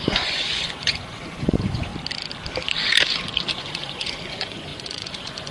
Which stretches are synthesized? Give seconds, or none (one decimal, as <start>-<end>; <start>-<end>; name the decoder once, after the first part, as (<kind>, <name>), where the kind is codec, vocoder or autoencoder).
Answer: 0.0-1.9 (vocoder, Vocos); 3.5-5.5